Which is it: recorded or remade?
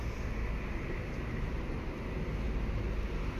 recorded